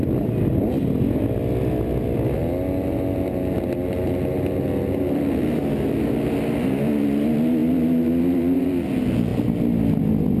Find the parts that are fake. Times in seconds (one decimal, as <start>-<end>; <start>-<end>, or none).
none